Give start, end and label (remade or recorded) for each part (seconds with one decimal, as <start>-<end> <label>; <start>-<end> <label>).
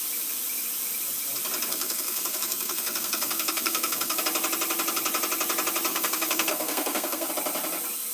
0.0-1.7 recorded; 1.7-4.2 remade; 4.2-5.9 recorded; 5.9-7.3 remade; 7.3-8.1 recorded